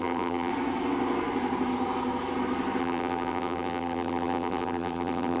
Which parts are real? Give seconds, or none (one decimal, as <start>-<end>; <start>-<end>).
0.5-2.8